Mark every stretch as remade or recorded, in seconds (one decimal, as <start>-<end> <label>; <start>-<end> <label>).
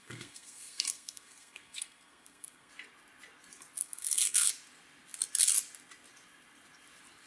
0.0-2.7 remade; 2.7-3.8 recorded; 3.8-4.5 remade; 4.5-7.3 recorded